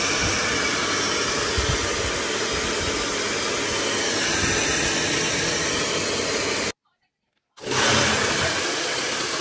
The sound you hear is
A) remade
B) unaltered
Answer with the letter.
B